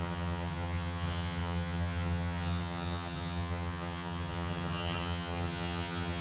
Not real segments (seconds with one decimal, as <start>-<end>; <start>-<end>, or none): 0.0-6.2